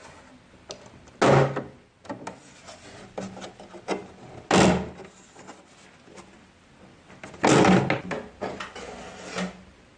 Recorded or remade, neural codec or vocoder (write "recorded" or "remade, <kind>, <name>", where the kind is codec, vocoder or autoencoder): recorded